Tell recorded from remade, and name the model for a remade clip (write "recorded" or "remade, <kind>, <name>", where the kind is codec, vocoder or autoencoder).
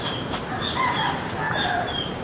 recorded